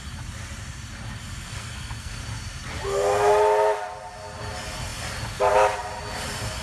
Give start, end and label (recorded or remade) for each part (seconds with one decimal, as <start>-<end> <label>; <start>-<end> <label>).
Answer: 0.0-1.5 recorded; 1.5-2.2 remade; 2.2-6.6 recorded